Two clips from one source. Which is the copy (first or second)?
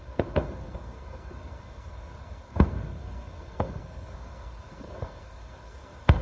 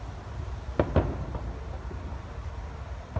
first